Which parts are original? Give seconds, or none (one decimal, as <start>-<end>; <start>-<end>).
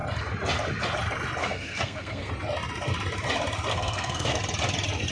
0.0-1.4; 2.3-3.7; 4.4-5.1